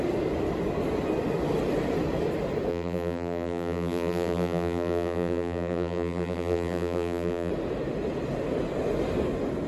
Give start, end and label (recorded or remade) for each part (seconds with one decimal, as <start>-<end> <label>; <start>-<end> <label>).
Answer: 0.0-2.7 recorded; 2.7-7.5 remade; 7.5-9.7 recorded

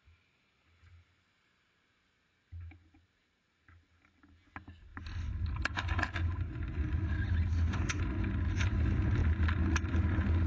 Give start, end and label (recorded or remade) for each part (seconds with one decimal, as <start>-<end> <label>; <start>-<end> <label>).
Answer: 0.0-7.5 recorded; 7.5-8.0 remade; 8.0-10.5 recorded

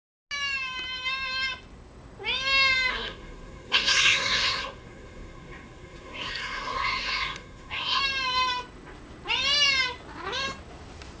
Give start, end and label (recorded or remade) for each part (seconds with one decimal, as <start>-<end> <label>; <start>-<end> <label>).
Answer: 0.0-2.9 recorded; 2.9-8.0 remade; 8.0-11.2 recorded

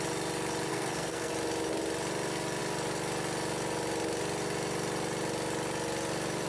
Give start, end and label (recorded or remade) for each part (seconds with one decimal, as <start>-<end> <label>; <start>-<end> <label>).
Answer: 0.0-0.7 recorded; 0.7-1.3 remade; 1.3-6.5 recorded